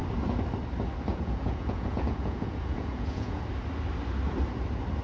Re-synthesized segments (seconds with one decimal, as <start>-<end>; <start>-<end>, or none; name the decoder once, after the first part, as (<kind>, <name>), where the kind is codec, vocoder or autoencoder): 1.1-3.4 (vocoder, Vocos)